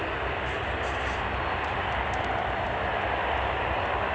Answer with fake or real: real